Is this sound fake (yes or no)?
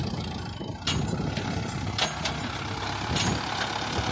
no